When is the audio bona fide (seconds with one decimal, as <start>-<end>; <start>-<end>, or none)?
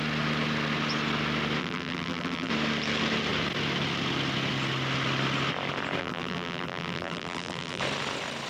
0.0-1.6; 2.5-6.0; 7.8-8.5